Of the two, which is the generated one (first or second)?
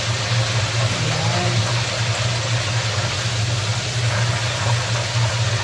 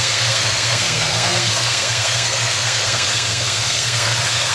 second